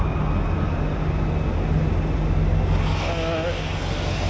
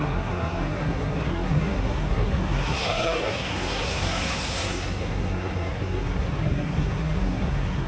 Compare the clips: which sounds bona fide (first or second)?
first